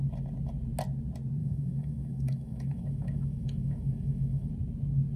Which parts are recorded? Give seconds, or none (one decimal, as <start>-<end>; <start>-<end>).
0.0-1.4; 4.5-5.2